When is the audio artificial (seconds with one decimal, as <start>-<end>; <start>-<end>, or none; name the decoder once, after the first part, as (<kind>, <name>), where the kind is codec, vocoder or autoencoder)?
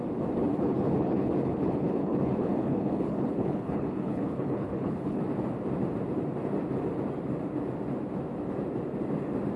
0.5-5.2 (codec, HILCodec)